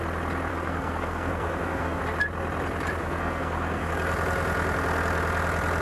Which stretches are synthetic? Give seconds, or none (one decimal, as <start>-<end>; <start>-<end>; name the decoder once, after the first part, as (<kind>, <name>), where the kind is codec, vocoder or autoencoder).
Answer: 0.5-2.0 (codec, SNAC); 3.0-3.9